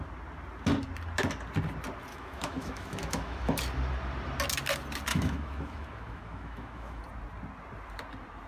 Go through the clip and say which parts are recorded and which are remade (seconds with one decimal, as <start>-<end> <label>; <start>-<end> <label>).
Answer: 0.0-2.1 recorded; 2.1-3.6 remade; 3.6-5.1 recorded; 5.1-7.0 remade; 7.0-8.5 recorded